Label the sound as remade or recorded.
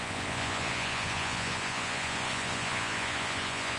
remade